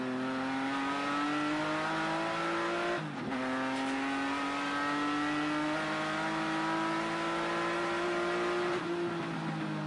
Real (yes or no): yes